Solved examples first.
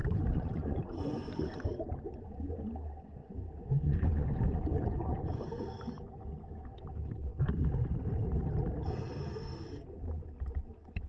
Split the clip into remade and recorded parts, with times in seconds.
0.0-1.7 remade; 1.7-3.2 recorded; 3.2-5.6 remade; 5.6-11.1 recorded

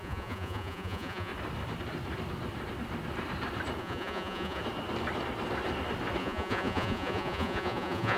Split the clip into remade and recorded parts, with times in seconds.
0.0-1.3 remade; 1.3-3.8 recorded; 3.8-4.6 remade; 4.6-6.2 recorded; 6.2-8.2 remade

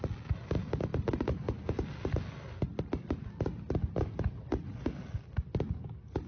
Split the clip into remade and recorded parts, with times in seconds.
0.0-6.3 recorded

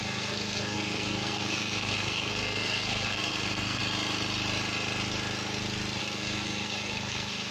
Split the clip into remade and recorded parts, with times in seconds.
0.0-3.8 remade; 3.8-6.0 recorded; 6.0-7.5 remade

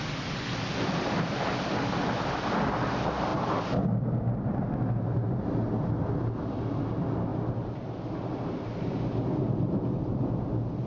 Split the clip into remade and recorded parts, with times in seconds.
0.0-10.9 recorded

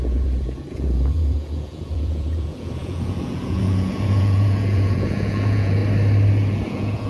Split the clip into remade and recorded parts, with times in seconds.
0.0-5.8 remade; 5.8-6.3 recorded; 6.3-7.1 remade